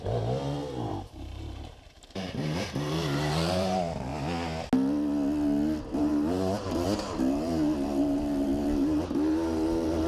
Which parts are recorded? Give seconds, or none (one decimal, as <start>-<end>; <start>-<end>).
4.1-6.0